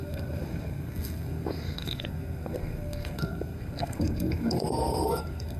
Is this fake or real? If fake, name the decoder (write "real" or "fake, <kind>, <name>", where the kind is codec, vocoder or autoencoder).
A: fake, codec, SNAC